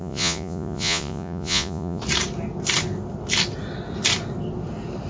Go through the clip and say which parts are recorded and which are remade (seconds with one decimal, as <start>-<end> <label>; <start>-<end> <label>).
0.0-2.0 remade; 2.0-5.1 recorded